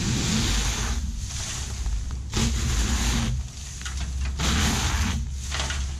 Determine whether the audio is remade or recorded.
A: recorded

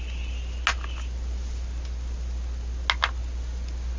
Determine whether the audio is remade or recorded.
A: recorded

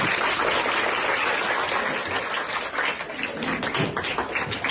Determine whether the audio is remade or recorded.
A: recorded